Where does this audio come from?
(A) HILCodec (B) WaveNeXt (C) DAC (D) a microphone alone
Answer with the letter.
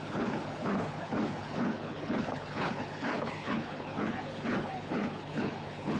A